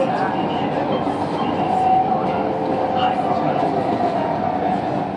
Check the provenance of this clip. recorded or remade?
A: recorded